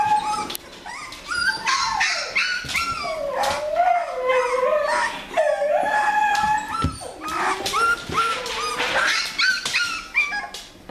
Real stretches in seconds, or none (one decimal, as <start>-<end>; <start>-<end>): 0.0-10.9